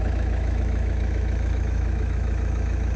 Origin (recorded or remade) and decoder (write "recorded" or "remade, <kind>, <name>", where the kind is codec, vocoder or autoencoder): remade, autoencoder, DAC-VAE